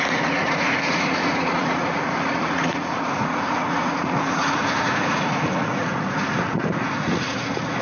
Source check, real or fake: fake